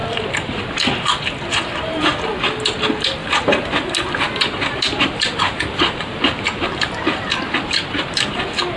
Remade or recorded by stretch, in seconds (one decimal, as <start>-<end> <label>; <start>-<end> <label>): 0.0-0.6 remade; 0.6-3.2 recorded; 3.2-8.4 remade; 8.4-8.8 recorded